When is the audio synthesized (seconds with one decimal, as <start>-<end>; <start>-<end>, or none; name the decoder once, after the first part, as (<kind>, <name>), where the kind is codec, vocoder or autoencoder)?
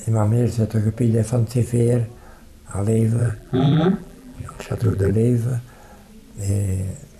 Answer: 3.2-5.1 (vocoder, BigVGAN v2)